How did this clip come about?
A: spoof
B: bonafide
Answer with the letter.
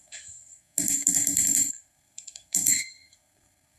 A